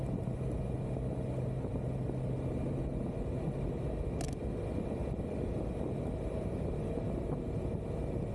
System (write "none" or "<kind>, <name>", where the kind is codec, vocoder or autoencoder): none